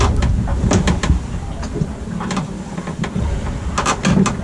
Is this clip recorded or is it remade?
recorded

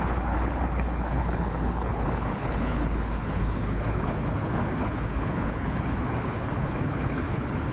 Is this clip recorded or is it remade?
remade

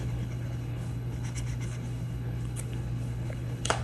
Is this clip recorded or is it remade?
remade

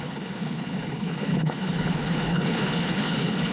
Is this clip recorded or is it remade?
remade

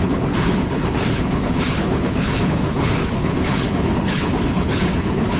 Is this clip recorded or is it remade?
remade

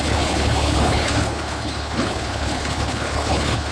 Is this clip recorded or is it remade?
remade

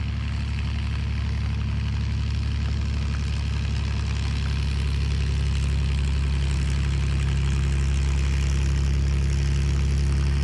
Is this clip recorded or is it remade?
recorded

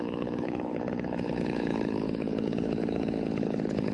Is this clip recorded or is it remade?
remade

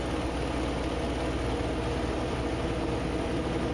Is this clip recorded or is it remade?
recorded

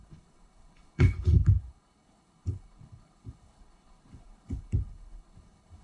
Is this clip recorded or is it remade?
remade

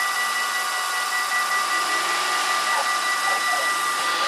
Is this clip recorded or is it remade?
recorded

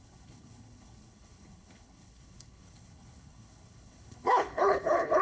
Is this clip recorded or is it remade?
remade